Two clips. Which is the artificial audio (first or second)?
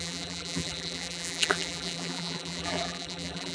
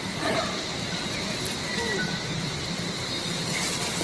first